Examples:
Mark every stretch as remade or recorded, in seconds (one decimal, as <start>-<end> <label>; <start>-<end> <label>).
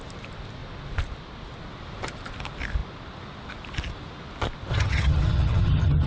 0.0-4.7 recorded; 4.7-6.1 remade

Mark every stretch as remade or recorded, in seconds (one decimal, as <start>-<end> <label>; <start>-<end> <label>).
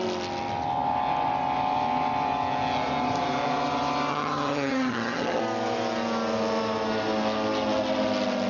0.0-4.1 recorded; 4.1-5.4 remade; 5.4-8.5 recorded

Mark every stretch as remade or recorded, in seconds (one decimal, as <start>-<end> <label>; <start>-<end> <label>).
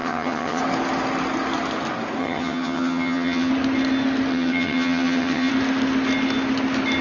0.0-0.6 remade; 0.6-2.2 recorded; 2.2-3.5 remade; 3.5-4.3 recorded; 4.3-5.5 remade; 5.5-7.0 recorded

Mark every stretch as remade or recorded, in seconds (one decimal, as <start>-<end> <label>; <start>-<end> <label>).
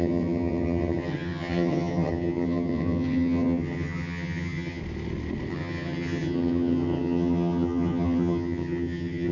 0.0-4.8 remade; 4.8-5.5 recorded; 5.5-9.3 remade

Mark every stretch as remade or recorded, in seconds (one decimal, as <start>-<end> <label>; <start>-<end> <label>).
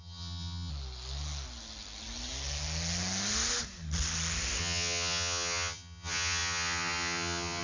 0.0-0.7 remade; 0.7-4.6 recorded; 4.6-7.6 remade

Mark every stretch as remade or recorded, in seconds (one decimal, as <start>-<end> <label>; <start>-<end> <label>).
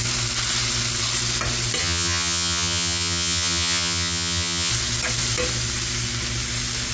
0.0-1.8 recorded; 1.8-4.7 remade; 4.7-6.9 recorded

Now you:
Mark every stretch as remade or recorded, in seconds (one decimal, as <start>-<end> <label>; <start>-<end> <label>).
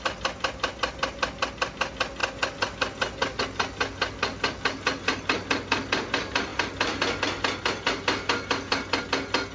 0.0-9.5 recorded